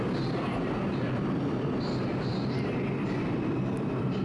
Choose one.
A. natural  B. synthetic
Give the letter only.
A